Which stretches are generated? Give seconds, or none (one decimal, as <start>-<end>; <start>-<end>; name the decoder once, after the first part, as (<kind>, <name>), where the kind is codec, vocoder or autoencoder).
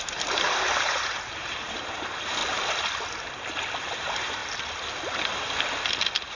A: 0.0-2.4 (vocoder, BigVGAN v2); 3.9-4.4